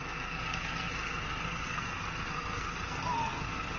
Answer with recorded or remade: remade